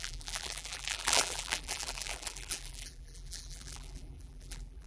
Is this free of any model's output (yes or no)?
no